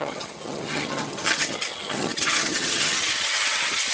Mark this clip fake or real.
fake